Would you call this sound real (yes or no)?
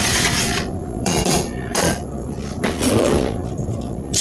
no